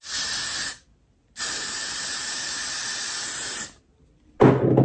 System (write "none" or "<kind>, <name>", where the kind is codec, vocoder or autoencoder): none